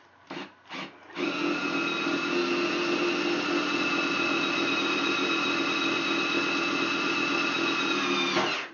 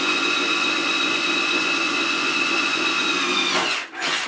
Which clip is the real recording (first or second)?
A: first